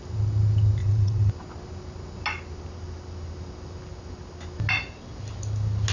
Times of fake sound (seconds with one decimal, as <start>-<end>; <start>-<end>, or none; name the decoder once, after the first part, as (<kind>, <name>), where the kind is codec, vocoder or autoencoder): 0.8-1.3 (vocoder, WaveNeXt)